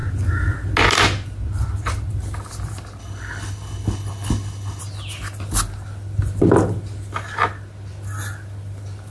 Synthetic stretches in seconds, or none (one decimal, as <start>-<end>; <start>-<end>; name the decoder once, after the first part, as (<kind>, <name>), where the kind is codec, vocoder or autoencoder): 3.0-4.8 (codec, HILCodec)